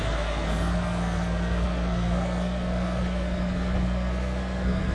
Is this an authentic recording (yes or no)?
no